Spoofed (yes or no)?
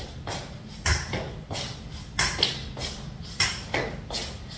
no